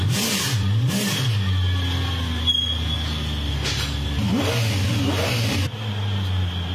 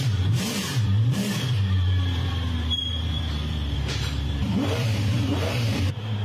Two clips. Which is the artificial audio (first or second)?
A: second